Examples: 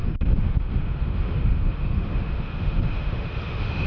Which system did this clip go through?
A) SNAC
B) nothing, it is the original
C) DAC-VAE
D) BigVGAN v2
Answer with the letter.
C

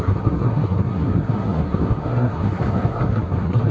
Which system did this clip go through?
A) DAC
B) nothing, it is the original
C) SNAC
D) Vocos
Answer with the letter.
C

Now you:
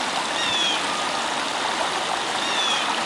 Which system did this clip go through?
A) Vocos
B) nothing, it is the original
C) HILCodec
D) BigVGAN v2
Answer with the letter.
B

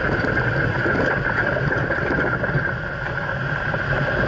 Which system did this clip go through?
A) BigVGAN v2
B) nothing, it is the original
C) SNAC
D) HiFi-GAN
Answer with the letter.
B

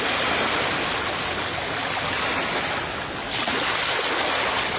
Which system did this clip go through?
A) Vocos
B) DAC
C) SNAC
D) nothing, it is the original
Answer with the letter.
D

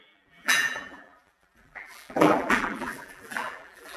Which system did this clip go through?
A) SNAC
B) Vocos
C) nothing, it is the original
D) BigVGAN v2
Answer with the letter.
D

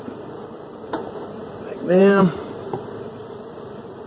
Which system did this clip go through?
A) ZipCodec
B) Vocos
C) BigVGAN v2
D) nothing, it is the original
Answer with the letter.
C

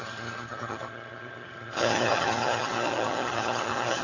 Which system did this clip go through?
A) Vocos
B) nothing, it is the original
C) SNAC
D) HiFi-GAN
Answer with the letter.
D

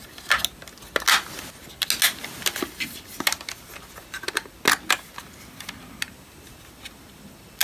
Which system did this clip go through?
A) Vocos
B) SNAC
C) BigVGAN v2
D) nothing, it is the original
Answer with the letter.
D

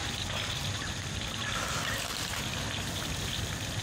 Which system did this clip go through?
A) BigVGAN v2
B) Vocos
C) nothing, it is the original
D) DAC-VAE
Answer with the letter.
C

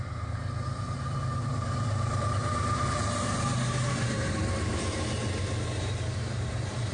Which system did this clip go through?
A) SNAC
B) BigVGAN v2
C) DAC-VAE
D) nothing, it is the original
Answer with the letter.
B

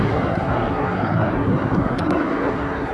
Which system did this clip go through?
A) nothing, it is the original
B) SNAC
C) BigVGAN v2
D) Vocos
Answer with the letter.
B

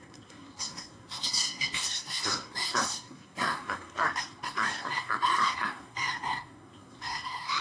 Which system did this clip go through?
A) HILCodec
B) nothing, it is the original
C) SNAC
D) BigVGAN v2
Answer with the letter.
C